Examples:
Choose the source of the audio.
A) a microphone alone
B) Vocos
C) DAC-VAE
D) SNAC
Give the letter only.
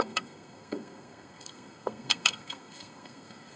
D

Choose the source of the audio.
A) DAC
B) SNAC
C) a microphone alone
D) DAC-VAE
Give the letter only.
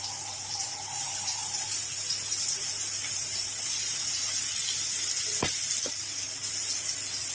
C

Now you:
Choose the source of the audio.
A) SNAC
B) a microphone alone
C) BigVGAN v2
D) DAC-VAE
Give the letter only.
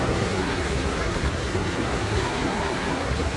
A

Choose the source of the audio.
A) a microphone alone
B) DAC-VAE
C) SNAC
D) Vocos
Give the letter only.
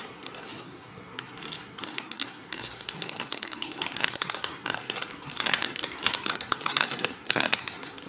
C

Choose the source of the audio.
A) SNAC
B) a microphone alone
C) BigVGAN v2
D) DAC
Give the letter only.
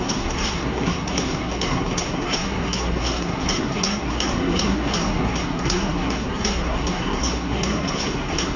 A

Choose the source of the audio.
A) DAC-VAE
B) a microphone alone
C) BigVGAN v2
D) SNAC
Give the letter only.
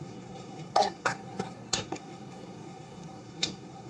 D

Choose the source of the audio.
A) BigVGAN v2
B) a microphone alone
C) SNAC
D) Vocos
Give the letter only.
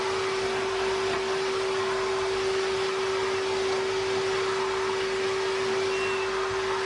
B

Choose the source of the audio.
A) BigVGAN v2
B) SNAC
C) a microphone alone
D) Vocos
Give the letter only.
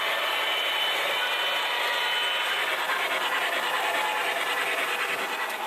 C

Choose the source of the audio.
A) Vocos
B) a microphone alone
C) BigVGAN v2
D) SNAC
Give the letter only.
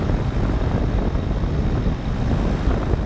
B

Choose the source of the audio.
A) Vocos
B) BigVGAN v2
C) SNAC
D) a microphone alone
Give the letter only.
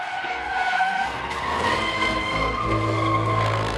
C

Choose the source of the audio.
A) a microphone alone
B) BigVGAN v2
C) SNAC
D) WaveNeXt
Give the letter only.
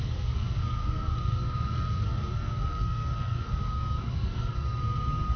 C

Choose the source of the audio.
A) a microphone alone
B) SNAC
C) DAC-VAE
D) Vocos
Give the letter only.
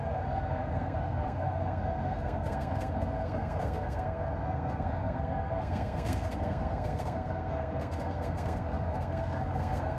B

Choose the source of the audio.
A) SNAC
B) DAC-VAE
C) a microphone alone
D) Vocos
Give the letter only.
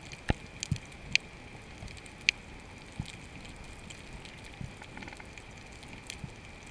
C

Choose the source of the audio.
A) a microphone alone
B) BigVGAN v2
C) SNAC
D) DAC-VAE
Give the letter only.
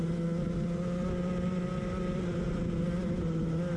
A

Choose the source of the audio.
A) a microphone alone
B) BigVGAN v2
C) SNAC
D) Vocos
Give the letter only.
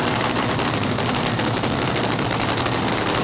A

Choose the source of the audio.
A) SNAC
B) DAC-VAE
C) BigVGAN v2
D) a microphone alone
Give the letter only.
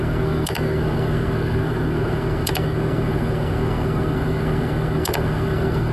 A